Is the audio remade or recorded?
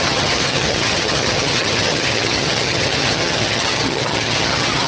remade